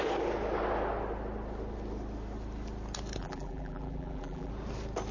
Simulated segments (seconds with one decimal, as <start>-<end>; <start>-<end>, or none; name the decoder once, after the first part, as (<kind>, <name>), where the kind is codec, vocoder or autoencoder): 3.2-4.5 (vocoder, BigVGAN v2)